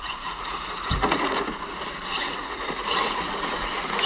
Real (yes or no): no